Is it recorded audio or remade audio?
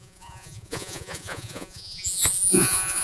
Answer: remade